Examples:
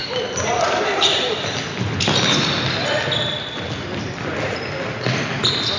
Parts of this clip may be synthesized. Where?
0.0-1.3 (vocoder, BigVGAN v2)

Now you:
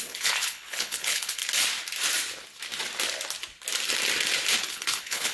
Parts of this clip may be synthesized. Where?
0.0-1.4 (codec, HILCodec); 4.6-5.3

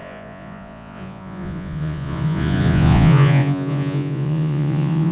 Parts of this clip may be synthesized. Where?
0.0-5.1 (vocoder, Vocos)

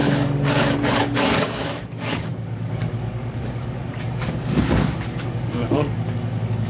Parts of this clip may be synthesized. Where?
0.0-6.7 (codec, DAC)

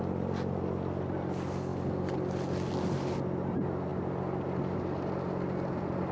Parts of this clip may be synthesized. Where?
none

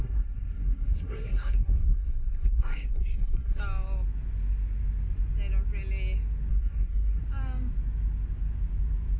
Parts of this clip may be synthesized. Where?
0.0-3.6 (codec, SNAC); 6.5-7.2

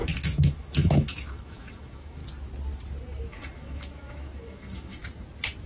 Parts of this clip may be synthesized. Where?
0.0-2.2 (autoencoder, DAC-VAE); 3.3-5.0

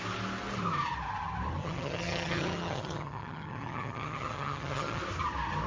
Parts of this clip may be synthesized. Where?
1.6-5.0 (vocoder, HiFi-GAN)